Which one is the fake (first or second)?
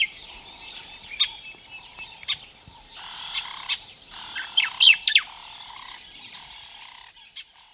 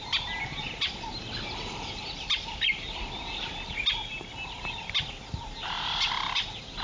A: first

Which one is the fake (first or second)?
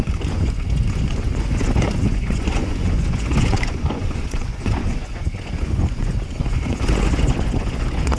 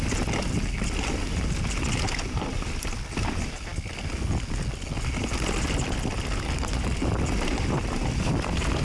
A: first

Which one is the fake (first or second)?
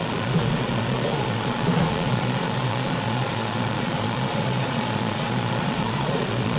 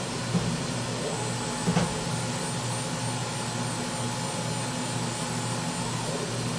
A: first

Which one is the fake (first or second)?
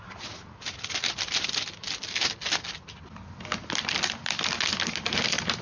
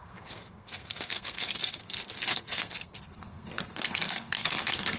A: second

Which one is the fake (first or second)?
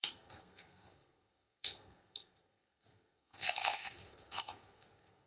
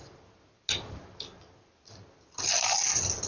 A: first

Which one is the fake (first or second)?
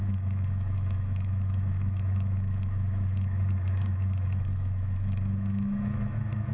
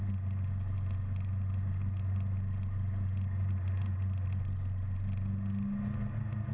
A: first